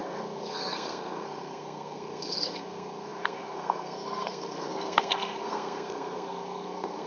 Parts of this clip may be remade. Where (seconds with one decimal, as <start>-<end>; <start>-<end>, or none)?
0.0-7.1